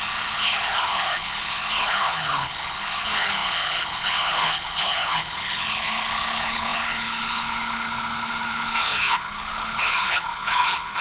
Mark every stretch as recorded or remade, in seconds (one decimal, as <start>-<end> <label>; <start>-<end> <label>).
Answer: 0.0-11.0 remade